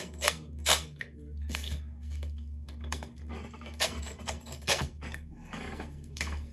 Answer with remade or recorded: remade